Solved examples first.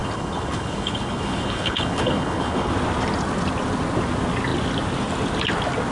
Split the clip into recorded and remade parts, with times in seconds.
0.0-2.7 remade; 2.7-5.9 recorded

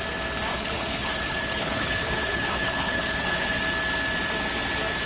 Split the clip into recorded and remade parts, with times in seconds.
0.0-0.5 recorded; 0.5-3.6 remade; 3.6-5.1 recorded

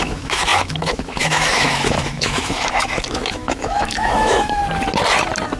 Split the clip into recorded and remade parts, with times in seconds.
0.0-4.6 remade; 4.6-5.6 recorded